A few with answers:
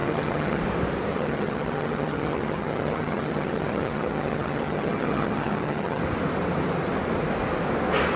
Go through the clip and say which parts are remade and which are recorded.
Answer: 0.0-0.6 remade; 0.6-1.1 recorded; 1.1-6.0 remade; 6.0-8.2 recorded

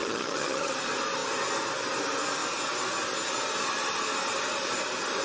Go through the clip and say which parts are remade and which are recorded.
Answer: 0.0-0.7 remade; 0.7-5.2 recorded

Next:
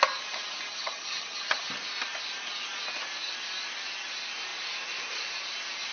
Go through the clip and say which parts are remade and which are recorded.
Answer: 0.0-0.7 recorded; 0.7-1.6 remade; 1.6-5.9 recorded